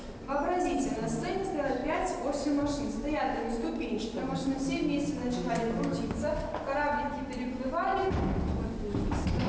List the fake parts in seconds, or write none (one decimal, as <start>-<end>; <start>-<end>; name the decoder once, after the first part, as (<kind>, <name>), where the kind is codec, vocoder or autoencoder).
none